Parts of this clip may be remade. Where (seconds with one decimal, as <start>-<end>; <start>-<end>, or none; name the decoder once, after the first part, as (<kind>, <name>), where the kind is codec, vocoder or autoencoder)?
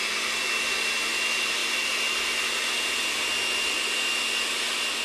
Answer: none